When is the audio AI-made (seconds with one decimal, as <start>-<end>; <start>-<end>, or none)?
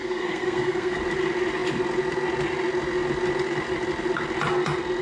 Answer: 0.0-1.0